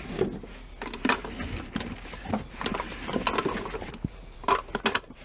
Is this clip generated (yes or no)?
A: no